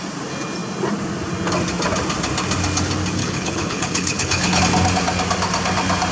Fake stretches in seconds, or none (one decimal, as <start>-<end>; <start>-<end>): 3.2-4.6